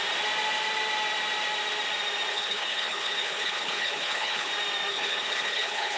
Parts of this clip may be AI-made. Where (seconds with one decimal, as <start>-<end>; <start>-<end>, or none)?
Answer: 2.3-4.5; 4.9-6.0